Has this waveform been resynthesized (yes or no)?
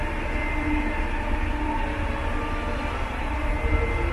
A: no